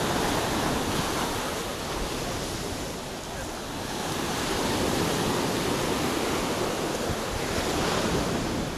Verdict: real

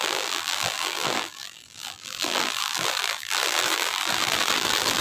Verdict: fake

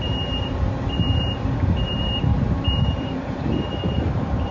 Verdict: fake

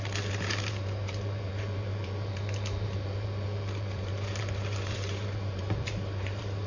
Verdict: fake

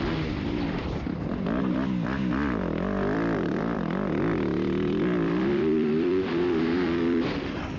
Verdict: fake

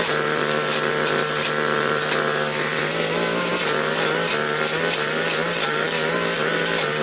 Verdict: fake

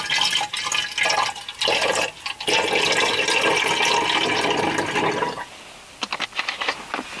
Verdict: real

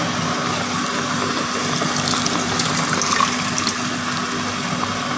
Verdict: real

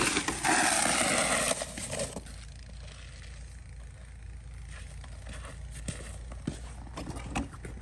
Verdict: real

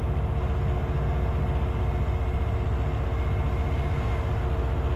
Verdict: real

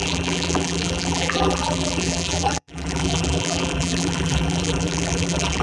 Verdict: fake